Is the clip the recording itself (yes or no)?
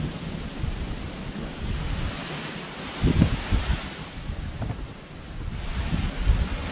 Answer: yes